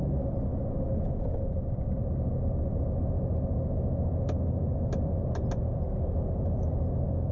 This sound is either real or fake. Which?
real